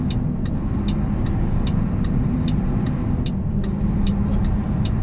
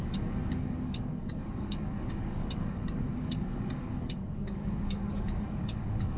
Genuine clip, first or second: first